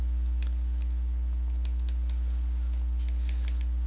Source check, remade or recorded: recorded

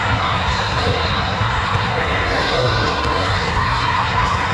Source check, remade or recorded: remade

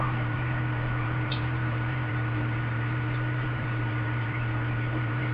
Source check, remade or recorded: remade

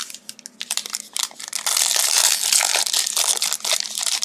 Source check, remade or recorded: recorded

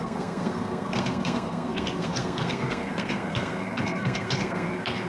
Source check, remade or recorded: remade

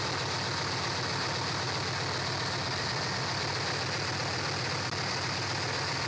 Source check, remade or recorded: recorded